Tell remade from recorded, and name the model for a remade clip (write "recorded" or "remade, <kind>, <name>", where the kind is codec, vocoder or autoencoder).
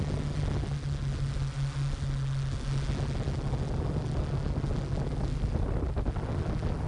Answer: recorded